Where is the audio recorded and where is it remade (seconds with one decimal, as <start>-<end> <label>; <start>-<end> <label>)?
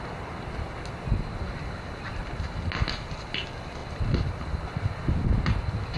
0.0-6.0 recorded